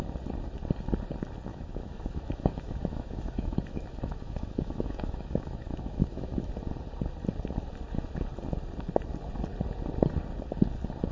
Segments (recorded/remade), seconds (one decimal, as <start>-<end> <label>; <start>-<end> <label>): 0.0-1.5 recorded; 1.5-6.5 remade; 6.5-11.1 recorded